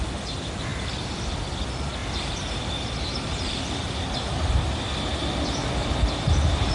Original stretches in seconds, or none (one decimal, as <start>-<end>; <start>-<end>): 0.0-2.0; 6.0-6.7